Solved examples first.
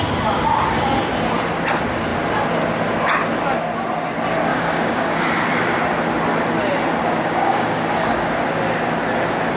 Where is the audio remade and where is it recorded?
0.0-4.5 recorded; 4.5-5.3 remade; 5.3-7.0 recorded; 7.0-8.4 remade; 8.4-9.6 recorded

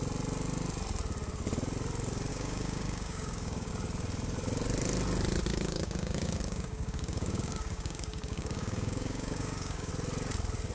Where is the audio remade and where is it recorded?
0.0-2.3 recorded; 2.3-3.7 remade; 3.7-5.5 recorded; 5.5-9.9 remade; 9.9-10.7 recorded

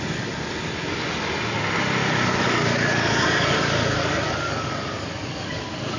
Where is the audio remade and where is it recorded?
0.0-2.0 recorded; 2.0-5.6 remade; 5.6-6.0 recorded

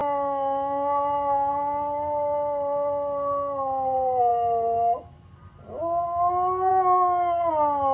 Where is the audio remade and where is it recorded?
0.0-1.5 remade; 1.5-6.7 recorded; 6.7-7.5 remade; 7.5-7.9 recorded

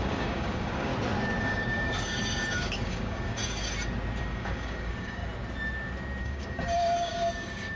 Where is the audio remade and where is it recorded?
0.0-0.9 remade; 0.9-1.4 recorded; 1.4-3.4 remade; 3.4-4.2 recorded; 4.2-5.2 remade; 5.2-6.2 recorded; 6.2-7.8 remade